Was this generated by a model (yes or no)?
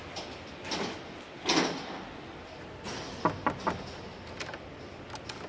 no